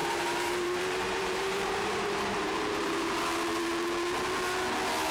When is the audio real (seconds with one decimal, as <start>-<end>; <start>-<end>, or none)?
3.1-5.1